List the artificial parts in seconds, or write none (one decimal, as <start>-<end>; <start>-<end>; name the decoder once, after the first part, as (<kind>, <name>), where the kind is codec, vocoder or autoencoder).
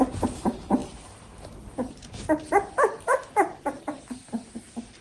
0.8-3.8 (vocoder, BigVGAN v2)